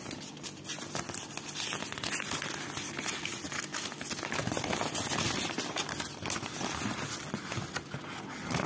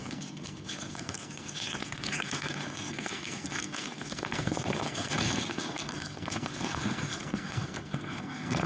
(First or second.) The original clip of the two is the first